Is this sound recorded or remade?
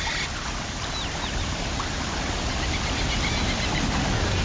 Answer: recorded